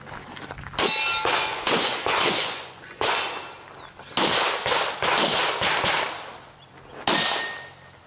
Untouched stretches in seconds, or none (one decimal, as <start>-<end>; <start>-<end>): 0.0-1.3; 3.2-8.1